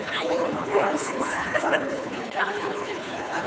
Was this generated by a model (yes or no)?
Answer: yes